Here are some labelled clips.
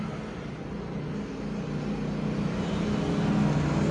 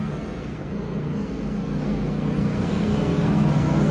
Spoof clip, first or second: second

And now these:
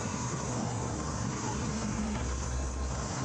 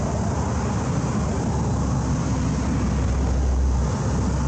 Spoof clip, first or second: first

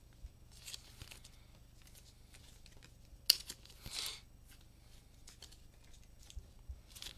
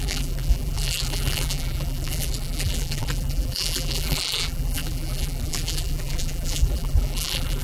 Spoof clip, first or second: second